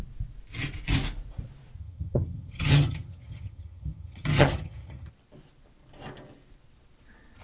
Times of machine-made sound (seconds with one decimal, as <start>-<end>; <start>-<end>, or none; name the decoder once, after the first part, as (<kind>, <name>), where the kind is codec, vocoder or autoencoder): 1.8-5.1 (vocoder, HiFi-GAN)